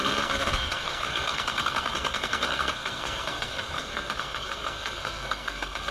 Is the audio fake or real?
fake